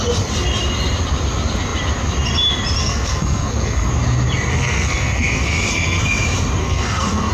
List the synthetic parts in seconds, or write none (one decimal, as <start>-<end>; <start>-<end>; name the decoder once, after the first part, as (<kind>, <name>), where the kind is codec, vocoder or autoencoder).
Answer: 2.8-3.9 (codec, SNAC); 4.5-6.0; 6.6-7.3